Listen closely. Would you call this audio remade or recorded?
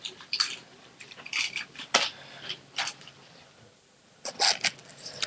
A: recorded